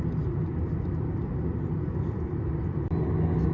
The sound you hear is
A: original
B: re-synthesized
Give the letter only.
A